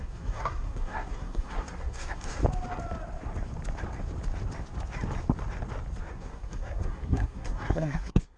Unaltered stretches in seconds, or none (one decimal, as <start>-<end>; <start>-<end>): 2.4-6.0